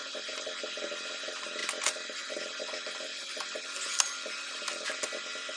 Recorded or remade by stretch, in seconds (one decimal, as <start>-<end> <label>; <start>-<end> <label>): 0.0-5.6 remade